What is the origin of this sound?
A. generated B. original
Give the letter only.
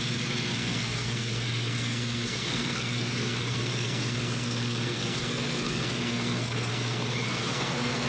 A